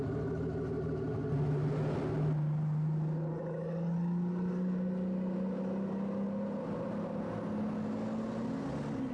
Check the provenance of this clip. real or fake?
real